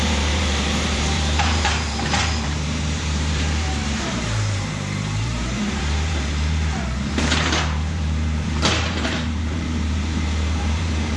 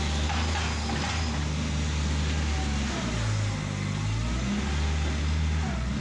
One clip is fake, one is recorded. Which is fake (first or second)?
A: first